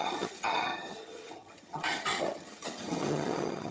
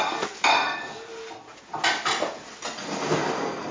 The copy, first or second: first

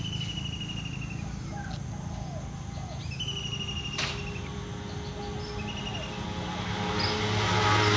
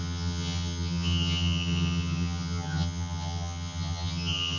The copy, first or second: second